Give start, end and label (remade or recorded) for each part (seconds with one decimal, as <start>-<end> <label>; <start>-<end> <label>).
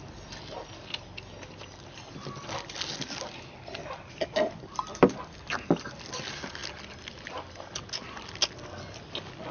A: 0.0-9.5 recorded